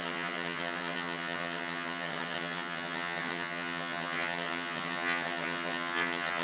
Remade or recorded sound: remade